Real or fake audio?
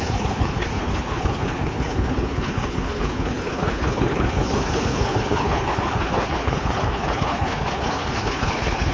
fake